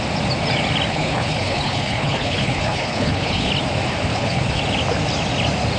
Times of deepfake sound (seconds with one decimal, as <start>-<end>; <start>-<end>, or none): 0.9-3.5; 4.1-4.6